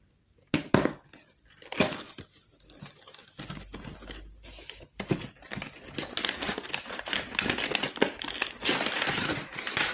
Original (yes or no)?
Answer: yes